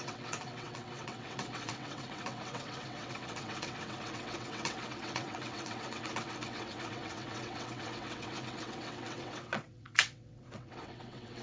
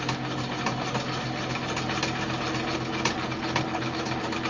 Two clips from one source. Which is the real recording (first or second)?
second